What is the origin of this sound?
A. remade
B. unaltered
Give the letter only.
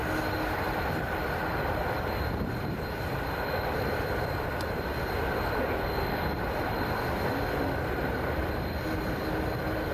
B